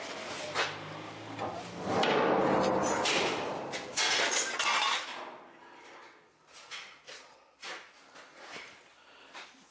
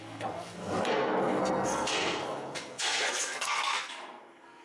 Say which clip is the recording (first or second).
first